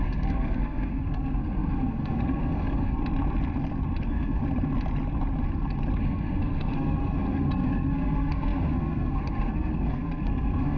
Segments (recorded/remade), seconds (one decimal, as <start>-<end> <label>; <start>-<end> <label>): 0.0-3.0 remade; 3.0-4.0 recorded; 4.0-4.4 remade; 4.4-6.0 recorded; 6.0-10.8 remade